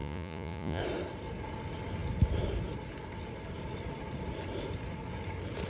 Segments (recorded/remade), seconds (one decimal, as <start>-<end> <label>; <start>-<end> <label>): 0.0-0.8 remade; 0.8-5.7 recorded